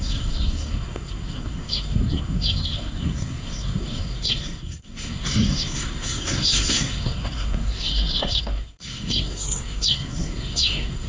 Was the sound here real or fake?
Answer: fake